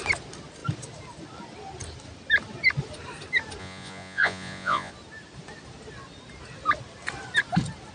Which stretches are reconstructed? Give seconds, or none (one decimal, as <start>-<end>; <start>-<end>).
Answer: 3.6-4.9